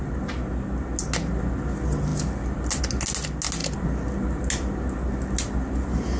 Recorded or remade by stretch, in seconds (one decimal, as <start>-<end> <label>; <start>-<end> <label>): 0.0-6.2 recorded